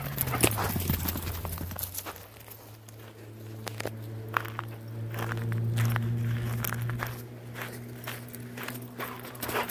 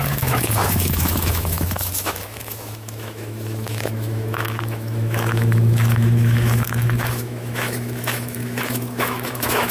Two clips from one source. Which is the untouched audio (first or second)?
first